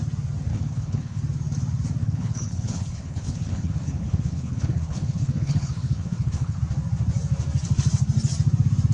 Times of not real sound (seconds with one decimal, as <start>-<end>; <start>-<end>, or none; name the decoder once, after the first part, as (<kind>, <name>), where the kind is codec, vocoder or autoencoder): 0.5-1.2 (codec, HILCodec); 2.0-6.6

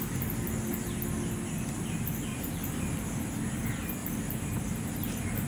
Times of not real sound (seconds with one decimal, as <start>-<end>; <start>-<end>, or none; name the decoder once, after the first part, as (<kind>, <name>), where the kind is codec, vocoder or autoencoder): 2.3-3.4 (vocoder, BigVGAN v2); 4.0-5.5

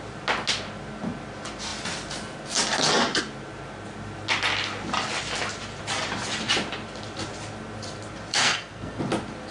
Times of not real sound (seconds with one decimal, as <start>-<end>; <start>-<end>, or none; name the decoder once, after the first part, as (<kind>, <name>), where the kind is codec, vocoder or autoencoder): 8.3-9.0 (codec, SNAC)